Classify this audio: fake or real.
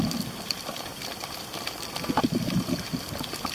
fake